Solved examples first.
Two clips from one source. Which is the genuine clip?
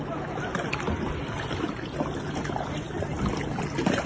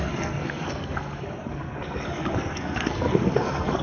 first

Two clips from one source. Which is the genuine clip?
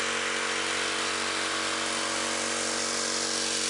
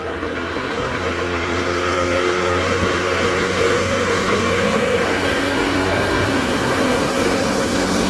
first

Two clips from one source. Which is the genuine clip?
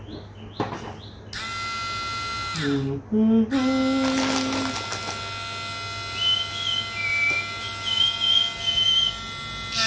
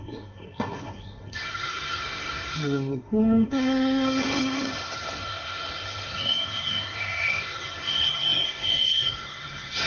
first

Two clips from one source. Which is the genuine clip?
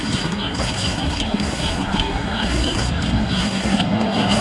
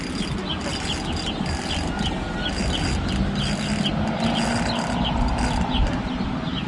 second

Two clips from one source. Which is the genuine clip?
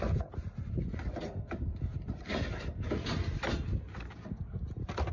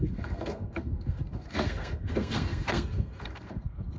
first